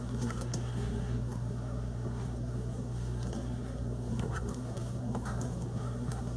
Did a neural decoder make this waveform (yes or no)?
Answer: yes